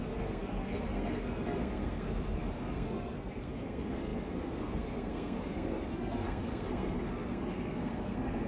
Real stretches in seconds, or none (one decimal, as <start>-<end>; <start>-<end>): none